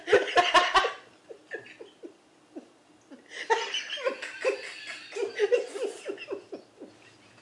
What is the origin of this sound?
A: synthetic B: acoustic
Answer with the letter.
B